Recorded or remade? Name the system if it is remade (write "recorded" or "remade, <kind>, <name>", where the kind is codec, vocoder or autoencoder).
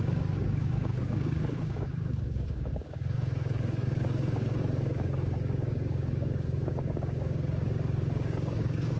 remade, codec, DAC